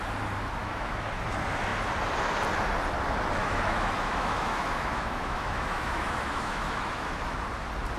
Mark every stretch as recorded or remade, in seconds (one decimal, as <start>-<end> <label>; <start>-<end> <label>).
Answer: 0.0-0.6 recorded; 0.6-1.2 remade; 1.2-3.4 recorded; 3.4-7.5 remade; 7.5-8.0 recorded

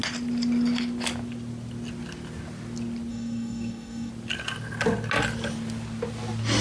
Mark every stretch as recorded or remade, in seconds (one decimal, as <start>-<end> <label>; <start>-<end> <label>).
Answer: 0.0-3.1 recorded; 3.1-4.1 remade; 4.1-6.6 recorded

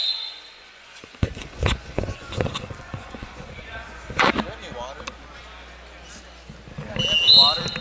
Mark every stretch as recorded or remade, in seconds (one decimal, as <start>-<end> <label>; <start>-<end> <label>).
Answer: 0.0-4.3 remade; 4.3-7.8 recorded

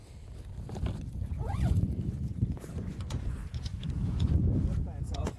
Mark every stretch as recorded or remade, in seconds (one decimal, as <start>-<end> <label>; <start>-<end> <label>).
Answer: 0.0-1.1 recorded; 1.1-4.4 remade; 4.4-5.0 recorded; 5.0-5.4 remade

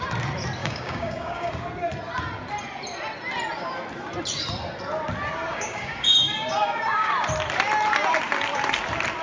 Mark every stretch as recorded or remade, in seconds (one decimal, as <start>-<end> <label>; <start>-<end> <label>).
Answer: 0.0-0.6 recorded; 0.6-1.5 remade; 1.5-5.5 recorded; 5.5-7.1 remade; 7.1-9.2 recorded

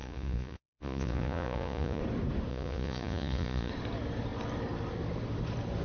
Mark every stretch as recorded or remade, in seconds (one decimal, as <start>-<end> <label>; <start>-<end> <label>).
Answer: 0.0-2.0 remade; 2.0-2.5 recorded; 2.5-3.7 remade; 3.7-5.8 recorded